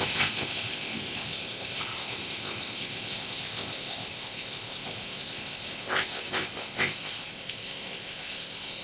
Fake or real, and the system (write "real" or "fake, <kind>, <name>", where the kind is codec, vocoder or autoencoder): fake, codec, ZipCodec